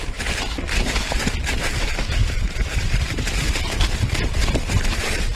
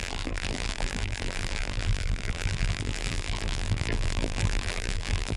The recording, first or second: first